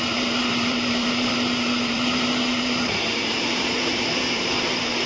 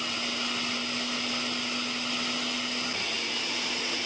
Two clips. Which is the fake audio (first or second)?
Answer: first